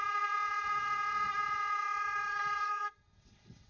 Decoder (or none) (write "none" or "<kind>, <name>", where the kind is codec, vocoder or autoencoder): vocoder, WaveNeXt